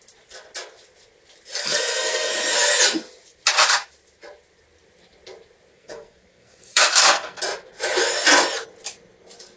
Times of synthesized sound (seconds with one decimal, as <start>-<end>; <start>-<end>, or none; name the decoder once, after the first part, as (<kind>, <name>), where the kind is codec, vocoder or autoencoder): 1.6-2.3 (codec, SNAC); 5.7-7.4